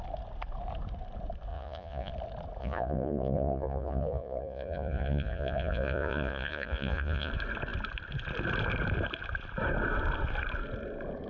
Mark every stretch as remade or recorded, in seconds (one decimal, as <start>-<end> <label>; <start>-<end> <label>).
0.0-1.5 recorded; 1.5-2.1 remade; 2.1-2.6 recorded; 2.6-7.3 remade; 7.3-11.3 recorded